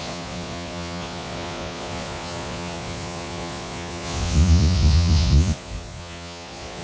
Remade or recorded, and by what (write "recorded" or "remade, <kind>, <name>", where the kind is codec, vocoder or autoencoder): remade, vocoder, Vocos